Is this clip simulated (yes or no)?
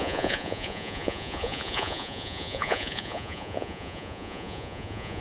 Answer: yes